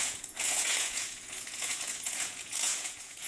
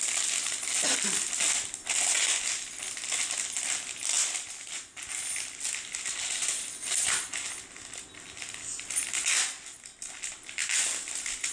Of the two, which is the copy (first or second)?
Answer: first